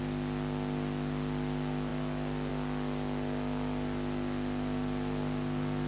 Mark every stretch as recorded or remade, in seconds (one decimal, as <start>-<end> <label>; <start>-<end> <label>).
0.0-5.9 recorded